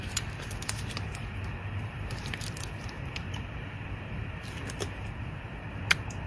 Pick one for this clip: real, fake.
fake